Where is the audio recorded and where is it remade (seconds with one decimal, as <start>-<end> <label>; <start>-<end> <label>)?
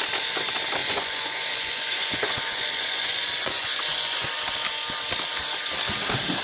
0.0-0.8 recorded; 0.8-4.3 remade; 4.3-6.4 recorded